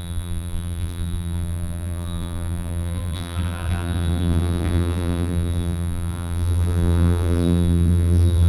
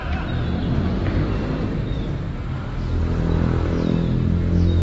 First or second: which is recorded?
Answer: second